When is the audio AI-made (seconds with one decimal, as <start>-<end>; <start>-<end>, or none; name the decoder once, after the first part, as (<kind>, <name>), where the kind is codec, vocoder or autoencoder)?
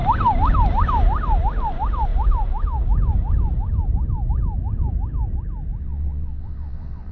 5.8-7.1 (vocoder, WaveNeXt)